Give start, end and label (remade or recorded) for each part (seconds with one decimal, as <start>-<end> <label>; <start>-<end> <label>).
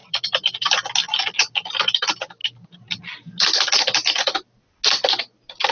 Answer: 0.0-0.9 remade; 0.9-5.7 recorded